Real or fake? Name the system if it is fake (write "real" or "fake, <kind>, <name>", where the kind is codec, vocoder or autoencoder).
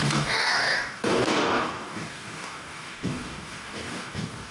fake, codec, DAC